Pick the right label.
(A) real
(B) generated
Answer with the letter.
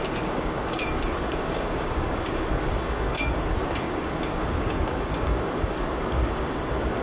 B